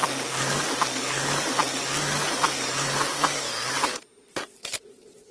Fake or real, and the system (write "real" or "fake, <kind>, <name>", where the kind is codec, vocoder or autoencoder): real